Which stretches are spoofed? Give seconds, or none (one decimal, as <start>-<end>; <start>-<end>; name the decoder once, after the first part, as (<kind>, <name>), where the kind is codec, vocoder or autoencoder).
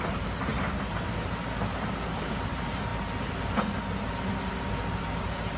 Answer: none